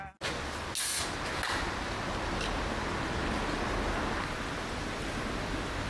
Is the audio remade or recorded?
recorded